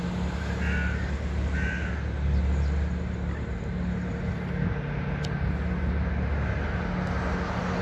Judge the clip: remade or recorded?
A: recorded